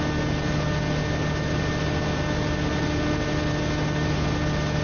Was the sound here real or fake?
real